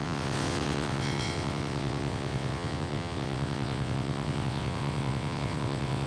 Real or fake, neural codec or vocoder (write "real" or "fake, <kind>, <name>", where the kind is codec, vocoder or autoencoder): fake, vocoder, WaveNeXt